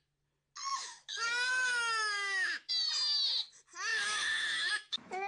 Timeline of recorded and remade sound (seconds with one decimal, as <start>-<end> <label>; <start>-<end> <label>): 0.0-0.7 recorded; 0.7-2.7 remade; 2.7-3.9 recorded; 3.9-5.3 remade